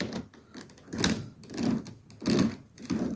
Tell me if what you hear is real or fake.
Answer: real